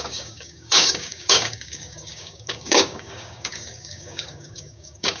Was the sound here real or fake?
fake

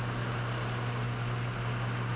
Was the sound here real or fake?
real